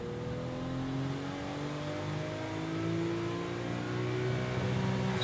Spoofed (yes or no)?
no